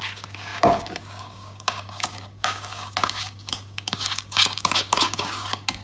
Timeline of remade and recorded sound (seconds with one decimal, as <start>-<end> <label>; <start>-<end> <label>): 0.0-5.8 remade